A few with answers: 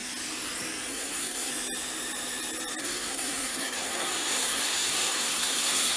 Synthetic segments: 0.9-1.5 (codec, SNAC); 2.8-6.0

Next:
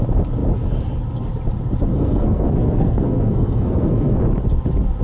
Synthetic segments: 1.9-4.2 (codec, SNAC)

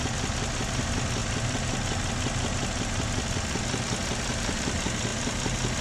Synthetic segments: none

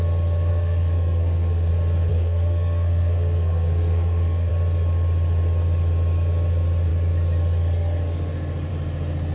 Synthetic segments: 0.5-1.7 (codec, SNAC); 2.1-4.5

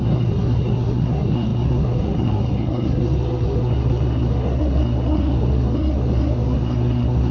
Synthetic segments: 0.0-7.3 (codec, SNAC)